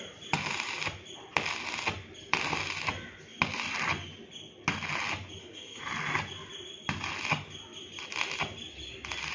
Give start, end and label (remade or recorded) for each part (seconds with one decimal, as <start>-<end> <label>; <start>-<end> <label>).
0.0-5.4 recorded; 5.4-5.9 remade; 5.9-9.3 recorded